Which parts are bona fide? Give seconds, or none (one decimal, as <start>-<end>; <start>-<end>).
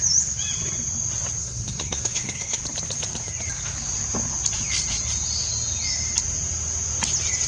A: 0.0-1.4; 2.6-7.5